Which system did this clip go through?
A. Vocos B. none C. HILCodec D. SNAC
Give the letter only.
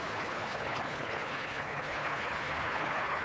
C